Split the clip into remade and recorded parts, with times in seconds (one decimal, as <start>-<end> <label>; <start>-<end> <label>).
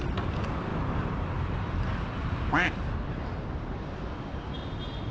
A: 0.0-5.1 recorded